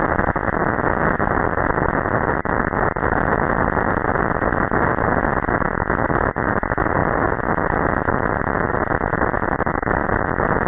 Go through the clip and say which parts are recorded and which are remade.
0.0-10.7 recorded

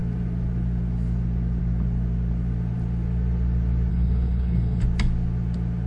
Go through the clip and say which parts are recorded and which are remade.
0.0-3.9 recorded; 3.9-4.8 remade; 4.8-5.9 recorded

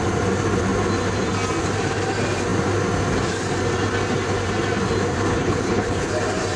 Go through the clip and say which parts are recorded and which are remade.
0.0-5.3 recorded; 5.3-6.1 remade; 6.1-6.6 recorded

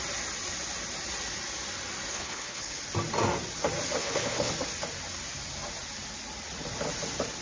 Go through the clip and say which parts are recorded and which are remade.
0.0-2.1 recorded; 2.1-2.8 remade; 2.8-4.0 recorded; 4.0-4.5 remade; 4.5-7.4 recorded

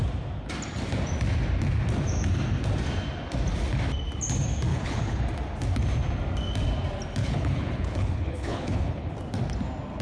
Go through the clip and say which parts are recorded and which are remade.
0.0-4.7 recorded; 4.7-5.2 remade; 5.2-7.2 recorded; 7.2-9.1 remade; 9.1-10.0 recorded

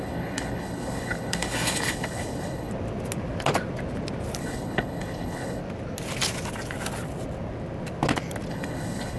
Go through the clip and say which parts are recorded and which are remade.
0.0-2.7 remade; 2.7-4.4 recorded; 4.4-5.6 remade; 5.6-8.5 recorded; 8.5-9.2 remade

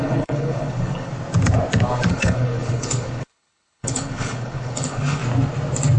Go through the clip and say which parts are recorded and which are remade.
0.0-1.1 remade; 1.1-2.1 recorded; 2.1-5.2 remade; 5.2-6.0 recorded